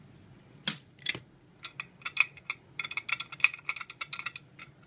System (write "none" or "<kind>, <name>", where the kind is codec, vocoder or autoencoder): none